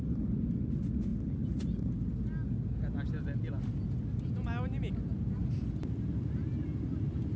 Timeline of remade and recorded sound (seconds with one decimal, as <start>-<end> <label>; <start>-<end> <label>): 0.0-7.4 recorded